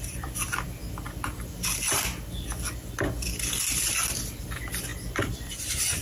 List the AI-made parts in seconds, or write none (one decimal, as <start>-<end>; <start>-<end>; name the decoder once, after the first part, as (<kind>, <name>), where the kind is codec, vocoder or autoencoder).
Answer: 0.0-0.8 (vocoder, BigVGAN v2); 4.4-6.0